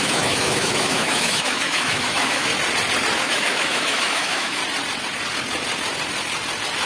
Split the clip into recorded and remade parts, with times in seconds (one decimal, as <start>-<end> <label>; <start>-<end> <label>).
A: 0.0-2.5 remade; 2.5-3.2 recorded; 3.2-4.6 remade; 4.6-6.9 recorded